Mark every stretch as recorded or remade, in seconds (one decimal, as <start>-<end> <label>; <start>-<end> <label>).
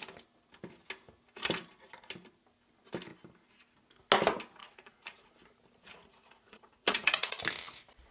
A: 0.0-4.6 recorded; 4.6-5.3 remade; 5.3-5.9 recorded; 5.9-7.4 remade; 7.4-8.1 recorded